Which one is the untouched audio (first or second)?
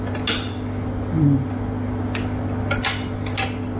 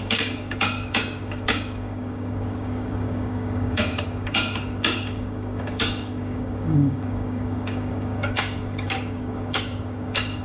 first